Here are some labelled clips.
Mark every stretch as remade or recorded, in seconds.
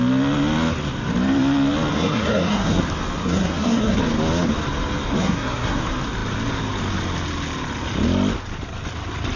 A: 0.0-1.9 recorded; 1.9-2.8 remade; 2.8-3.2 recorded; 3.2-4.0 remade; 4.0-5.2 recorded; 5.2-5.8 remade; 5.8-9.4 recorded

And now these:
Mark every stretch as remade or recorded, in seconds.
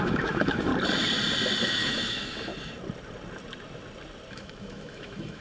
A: 0.0-0.7 remade; 0.7-1.6 recorded; 1.6-2.5 remade; 2.5-4.3 recorded; 4.3-5.4 remade